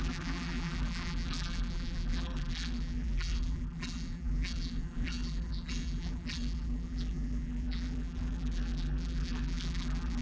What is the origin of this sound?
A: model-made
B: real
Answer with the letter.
A